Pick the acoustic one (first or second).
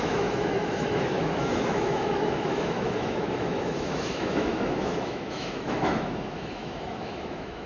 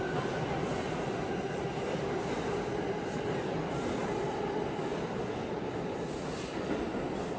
second